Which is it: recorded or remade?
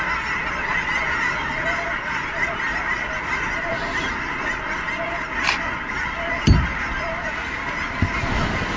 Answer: recorded